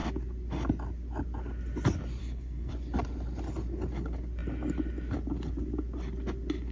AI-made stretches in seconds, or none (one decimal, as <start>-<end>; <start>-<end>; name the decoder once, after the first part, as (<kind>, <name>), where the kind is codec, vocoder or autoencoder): 2.2-2.7 (codec, SNAC)